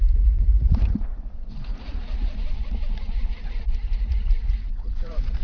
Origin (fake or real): fake